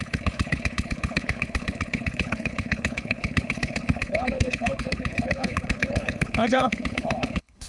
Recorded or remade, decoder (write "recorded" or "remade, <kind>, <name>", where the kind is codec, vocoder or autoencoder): remade, codec, HILCodec